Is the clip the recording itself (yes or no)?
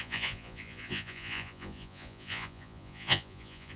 no